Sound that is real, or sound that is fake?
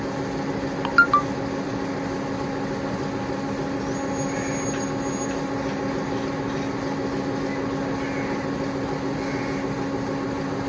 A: real